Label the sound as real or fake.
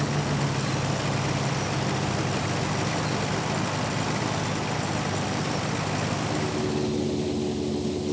real